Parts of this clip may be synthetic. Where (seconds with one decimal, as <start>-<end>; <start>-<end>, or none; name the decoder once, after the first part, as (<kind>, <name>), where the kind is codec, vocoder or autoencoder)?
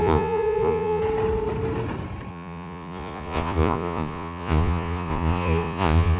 0.0-1.0 (vocoder, Vocos); 2.3-6.2